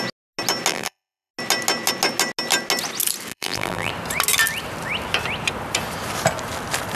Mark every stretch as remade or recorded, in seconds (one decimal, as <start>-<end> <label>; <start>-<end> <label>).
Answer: 0.0-0.7 recorded; 0.7-1.3 remade; 1.3-3.3 recorded; 3.3-3.9 remade; 3.9-7.0 recorded